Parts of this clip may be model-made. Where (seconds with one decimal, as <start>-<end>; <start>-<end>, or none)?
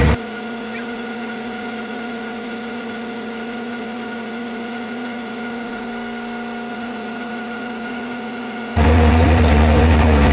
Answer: 0.0-5.9; 6.7-10.3